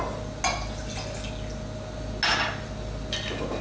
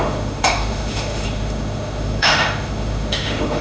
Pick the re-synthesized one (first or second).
second